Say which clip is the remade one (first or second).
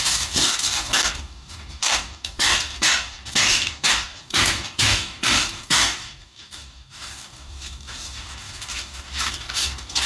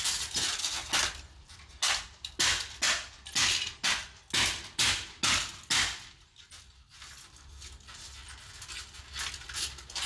first